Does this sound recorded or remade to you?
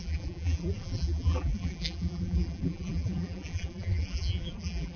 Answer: remade